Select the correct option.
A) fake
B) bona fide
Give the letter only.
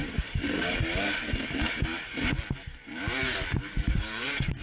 A